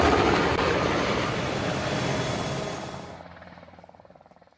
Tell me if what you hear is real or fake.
real